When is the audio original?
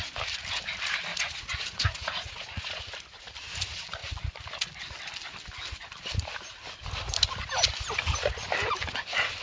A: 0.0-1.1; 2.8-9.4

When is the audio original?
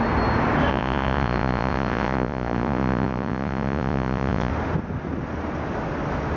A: 0.0-0.7; 4.5-6.4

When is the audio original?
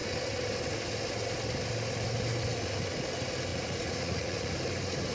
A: 0.0-3.5; 4.5-5.1